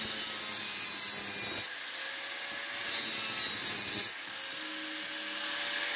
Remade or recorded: recorded